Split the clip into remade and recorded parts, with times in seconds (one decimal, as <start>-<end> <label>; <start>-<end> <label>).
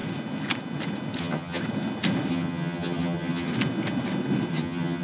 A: 0.0-1.2 recorded; 1.2-1.6 remade; 1.6-2.3 recorded; 2.3-3.5 remade; 3.5-4.5 recorded; 4.5-5.0 remade